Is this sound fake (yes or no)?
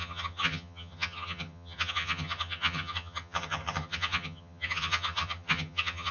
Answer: yes